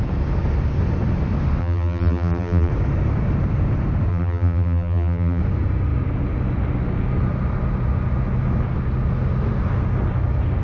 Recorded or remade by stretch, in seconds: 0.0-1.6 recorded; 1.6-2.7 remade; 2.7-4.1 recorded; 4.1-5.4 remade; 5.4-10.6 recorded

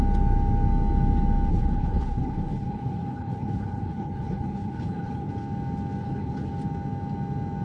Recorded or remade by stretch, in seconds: 0.0-1.5 recorded; 1.5-5.3 remade; 5.3-6.0 recorded; 6.0-6.5 remade; 6.5-7.6 recorded